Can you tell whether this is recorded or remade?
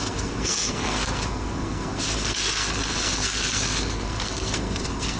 remade